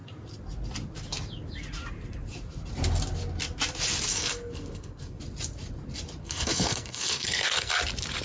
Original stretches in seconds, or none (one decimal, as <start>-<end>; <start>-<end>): 0.0-4.1; 5.2-6.2; 7.7-8.2